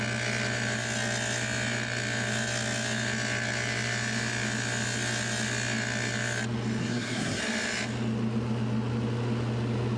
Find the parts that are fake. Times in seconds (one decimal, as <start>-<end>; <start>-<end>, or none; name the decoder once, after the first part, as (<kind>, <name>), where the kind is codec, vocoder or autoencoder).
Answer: 6.8-7.4 (codec, SNAC)